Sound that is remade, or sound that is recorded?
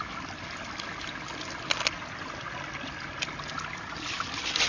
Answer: recorded